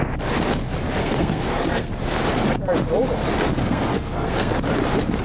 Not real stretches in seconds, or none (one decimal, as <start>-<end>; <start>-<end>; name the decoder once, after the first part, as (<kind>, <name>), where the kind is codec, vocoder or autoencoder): 1.0-1.9 (codec, SNAC); 3.6-4.5